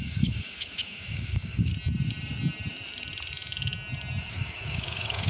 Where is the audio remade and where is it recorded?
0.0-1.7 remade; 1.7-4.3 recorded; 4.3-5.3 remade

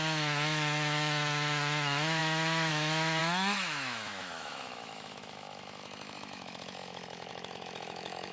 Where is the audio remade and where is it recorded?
0.0-8.3 remade

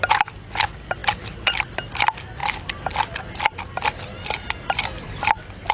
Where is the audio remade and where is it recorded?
0.0-5.7 recorded

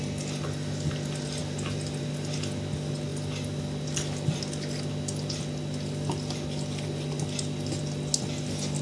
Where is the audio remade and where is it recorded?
0.0-8.8 recorded

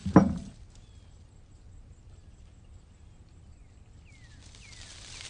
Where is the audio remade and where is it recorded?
0.0-5.3 recorded

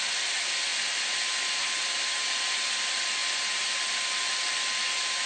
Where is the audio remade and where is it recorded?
0.0-5.3 recorded

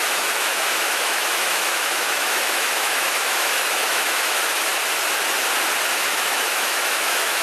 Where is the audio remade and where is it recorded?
0.0-4.7 remade; 4.7-5.9 recorded; 5.9-7.4 remade

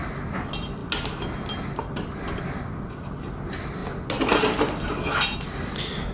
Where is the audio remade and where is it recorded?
0.0-6.1 recorded